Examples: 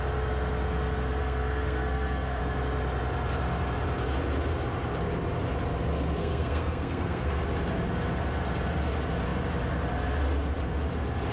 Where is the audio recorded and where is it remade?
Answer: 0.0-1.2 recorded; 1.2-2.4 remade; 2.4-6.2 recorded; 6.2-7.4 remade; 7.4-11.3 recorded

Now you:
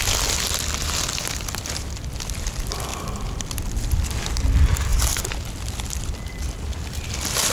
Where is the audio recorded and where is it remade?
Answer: 0.0-7.5 recorded

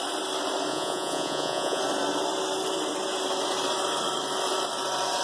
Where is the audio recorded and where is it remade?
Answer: 0.0-0.7 recorded; 0.7-1.8 remade; 1.8-5.2 recorded